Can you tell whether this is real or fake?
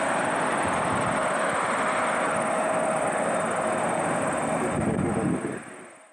real